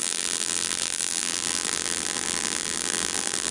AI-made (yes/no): yes